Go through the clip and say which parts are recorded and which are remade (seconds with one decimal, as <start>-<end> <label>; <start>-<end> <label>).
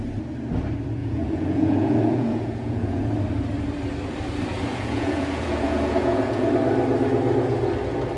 0.0-1.0 recorded; 1.0-3.0 remade; 3.0-4.7 recorded; 4.7-6.5 remade; 6.5-8.2 recorded